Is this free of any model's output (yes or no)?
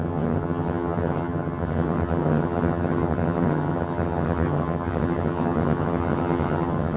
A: no